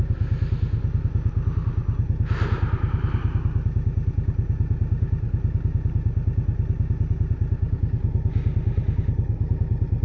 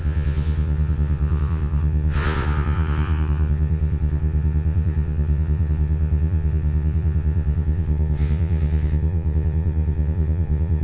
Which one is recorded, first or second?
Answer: first